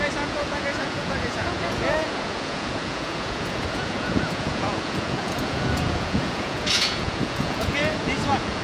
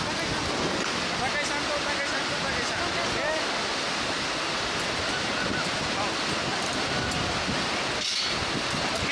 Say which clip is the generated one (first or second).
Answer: first